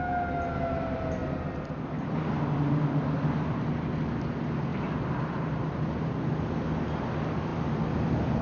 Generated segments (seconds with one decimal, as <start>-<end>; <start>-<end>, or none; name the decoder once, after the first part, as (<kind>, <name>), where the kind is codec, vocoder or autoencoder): 4.7-6.4 (vocoder, BigVGAN v2); 7.5-8.4